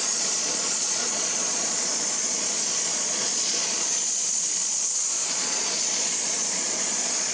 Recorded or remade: remade